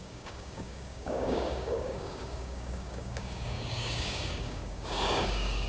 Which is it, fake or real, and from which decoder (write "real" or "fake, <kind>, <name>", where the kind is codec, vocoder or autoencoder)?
fake, codec, DAC